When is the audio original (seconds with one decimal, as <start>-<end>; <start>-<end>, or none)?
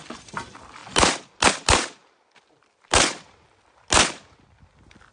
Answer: 0.0-5.1